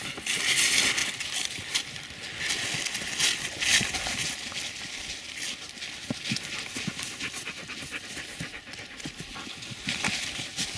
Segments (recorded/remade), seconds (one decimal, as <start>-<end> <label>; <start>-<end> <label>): 0.0-10.8 recorded